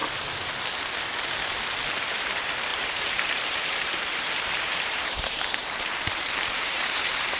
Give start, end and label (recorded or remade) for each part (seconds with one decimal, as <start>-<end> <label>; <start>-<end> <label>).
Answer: 0.0-2.0 recorded; 2.0-7.4 remade